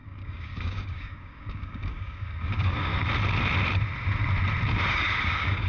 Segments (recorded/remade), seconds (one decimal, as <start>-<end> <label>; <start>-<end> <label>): 0.0-2.9 remade; 2.9-4.9 recorded; 4.9-5.7 remade